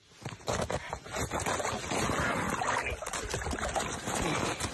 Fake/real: real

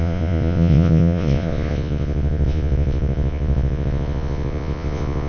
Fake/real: fake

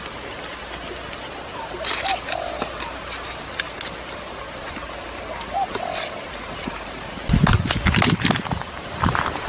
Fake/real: real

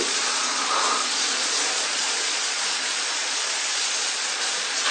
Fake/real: fake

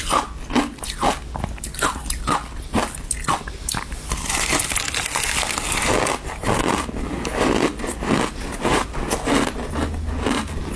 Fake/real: real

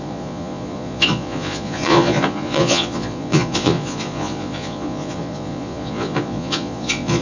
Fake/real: fake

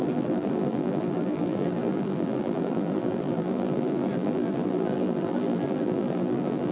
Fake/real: fake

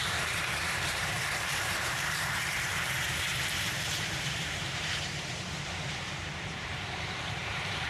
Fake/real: fake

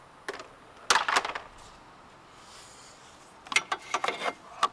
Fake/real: real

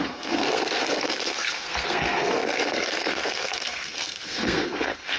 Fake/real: fake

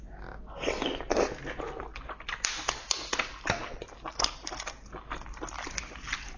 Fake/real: real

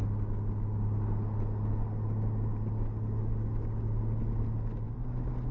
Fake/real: real